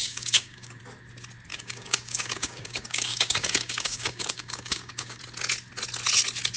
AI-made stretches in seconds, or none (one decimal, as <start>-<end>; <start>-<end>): 0.0-0.8; 1.5-5.2